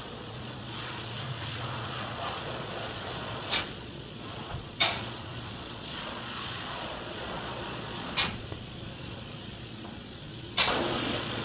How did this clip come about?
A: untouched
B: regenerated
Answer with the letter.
B